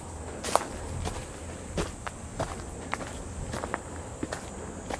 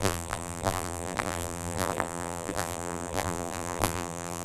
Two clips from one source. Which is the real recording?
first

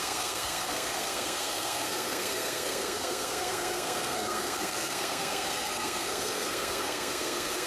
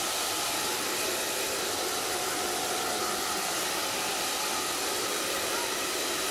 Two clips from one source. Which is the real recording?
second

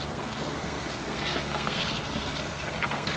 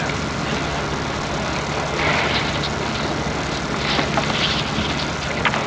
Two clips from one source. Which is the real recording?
second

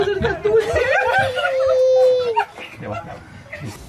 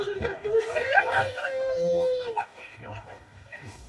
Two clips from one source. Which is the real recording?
first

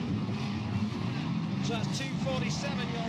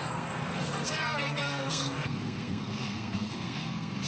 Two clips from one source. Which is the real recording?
first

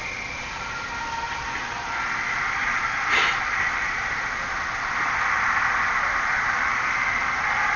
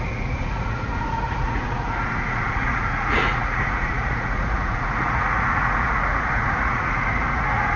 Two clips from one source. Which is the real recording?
first